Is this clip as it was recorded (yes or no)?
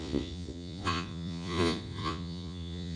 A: no